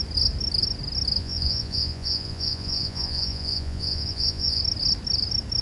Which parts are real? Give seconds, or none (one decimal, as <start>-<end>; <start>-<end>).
0.0-1.2; 4.6-5.6